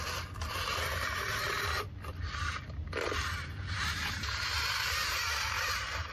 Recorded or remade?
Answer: recorded